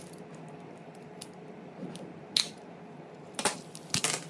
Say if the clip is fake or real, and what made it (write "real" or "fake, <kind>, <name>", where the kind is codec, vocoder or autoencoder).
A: real